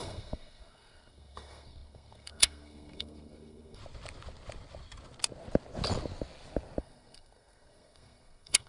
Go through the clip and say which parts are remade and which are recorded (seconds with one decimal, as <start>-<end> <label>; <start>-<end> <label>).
0.0-3.8 remade; 3.8-6.8 recorded; 6.8-8.7 remade